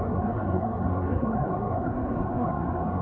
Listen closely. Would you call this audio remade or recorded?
remade